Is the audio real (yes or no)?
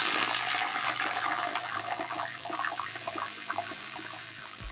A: no